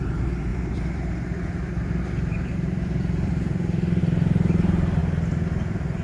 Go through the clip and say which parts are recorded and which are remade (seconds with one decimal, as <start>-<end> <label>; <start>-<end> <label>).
0.0-0.5 recorded; 0.5-4.0 remade; 4.0-6.0 recorded